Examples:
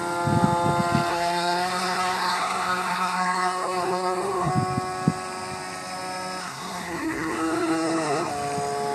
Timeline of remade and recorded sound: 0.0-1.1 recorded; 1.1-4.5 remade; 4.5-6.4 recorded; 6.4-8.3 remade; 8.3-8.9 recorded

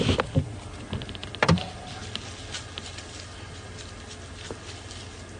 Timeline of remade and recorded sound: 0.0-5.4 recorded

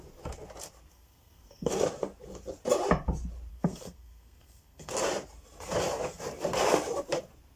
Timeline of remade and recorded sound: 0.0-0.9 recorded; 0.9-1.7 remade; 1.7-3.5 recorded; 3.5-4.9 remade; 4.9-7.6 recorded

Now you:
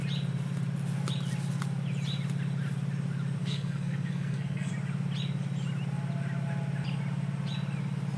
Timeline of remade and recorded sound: 0.0-3.4 recorded; 3.4-4.7 remade; 4.7-8.2 recorded